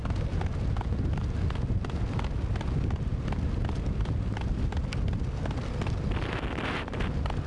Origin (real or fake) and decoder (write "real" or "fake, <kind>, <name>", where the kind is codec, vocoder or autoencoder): real